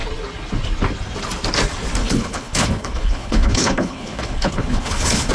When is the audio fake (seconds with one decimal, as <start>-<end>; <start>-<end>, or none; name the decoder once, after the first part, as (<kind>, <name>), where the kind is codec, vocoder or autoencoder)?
2.0-5.3 (codec, HILCodec)